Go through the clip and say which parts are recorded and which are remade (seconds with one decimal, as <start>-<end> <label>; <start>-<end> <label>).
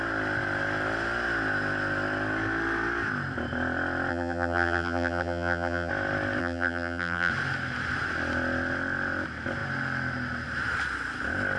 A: 0.0-4.1 recorded; 4.1-5.9 remade; 5.9-6.4 recorded; 6.4-7.3 remade; 7.3-11.6 recorded